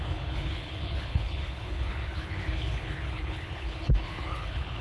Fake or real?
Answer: fake